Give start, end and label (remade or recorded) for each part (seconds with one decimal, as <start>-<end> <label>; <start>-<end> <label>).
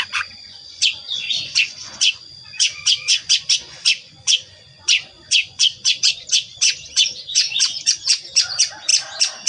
0.0-8.9 remade; 8.9-9.5 recorded